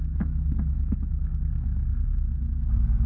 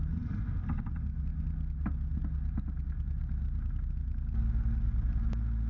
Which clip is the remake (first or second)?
first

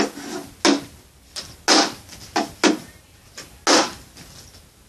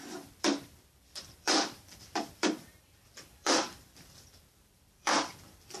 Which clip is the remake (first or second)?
second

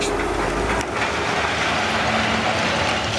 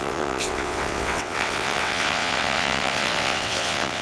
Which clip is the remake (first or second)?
second